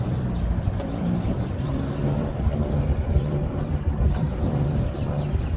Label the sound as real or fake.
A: fake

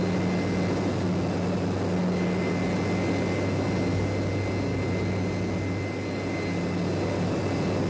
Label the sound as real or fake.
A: real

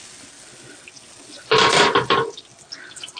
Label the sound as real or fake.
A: real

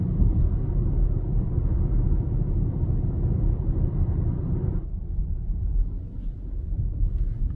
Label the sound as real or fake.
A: real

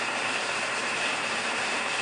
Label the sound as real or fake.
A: fake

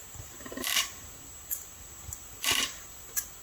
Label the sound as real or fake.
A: fake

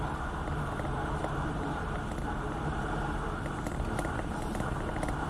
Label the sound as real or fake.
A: fake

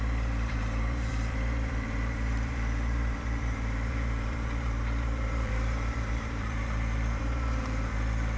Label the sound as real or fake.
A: fake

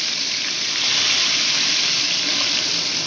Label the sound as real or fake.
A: fake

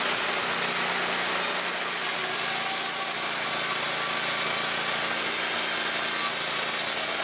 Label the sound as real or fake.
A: real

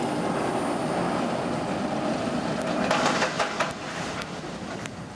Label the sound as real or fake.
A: real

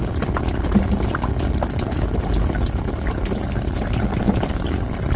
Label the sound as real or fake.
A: real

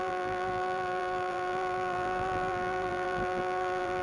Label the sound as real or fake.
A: fake